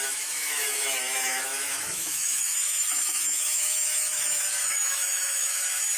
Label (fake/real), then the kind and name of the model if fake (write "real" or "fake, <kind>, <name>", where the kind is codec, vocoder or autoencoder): fake, autoencoder, DAC-VAE